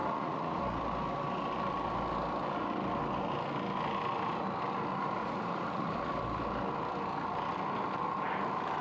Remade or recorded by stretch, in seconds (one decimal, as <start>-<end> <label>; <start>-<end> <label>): 0.0-0.8 remade; 0.8-5.2 recorded; 5.2-6.1 remade; 6.1-8.8 recorded